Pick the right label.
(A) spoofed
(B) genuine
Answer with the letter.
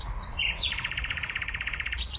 A